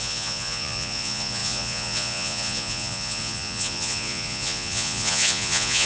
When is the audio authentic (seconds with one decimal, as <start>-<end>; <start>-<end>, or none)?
none